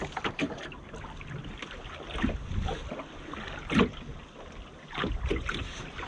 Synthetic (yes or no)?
no